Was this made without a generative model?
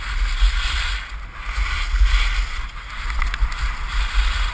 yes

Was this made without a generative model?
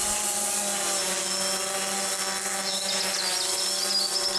yes